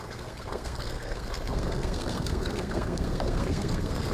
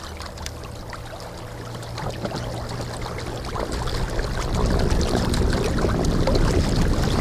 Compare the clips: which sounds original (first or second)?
second